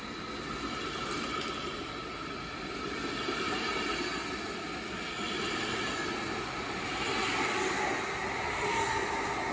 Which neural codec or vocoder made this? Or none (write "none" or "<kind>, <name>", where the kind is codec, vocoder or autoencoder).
none